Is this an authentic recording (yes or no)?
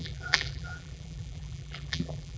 no